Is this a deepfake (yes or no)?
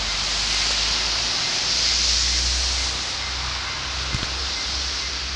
no